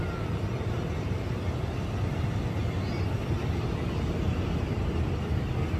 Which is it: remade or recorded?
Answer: recorded